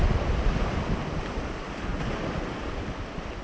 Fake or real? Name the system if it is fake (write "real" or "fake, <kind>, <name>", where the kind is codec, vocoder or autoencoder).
real